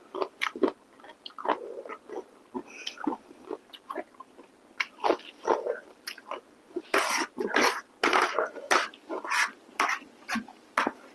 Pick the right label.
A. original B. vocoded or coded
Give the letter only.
A